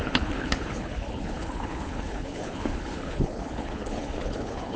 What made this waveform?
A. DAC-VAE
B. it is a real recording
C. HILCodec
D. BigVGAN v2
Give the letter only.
C